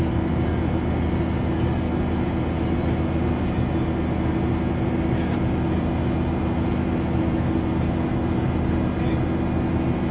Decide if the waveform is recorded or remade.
recorded